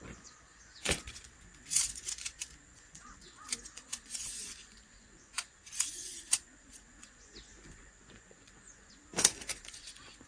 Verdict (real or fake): fake